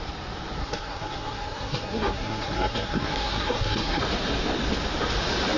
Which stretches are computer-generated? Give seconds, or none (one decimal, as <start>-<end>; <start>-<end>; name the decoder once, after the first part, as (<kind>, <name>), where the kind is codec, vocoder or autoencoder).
0.6-4.0 (codec, SNAC)